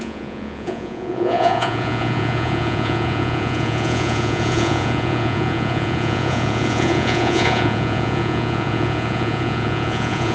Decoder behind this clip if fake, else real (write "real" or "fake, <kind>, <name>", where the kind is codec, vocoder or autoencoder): fake, vocoder, Vocos